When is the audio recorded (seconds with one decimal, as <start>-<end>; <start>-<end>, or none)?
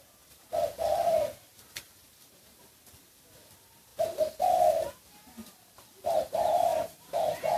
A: 0.5-1.5; 3.9-6.3